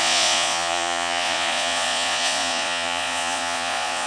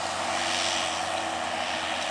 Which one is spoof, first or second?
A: first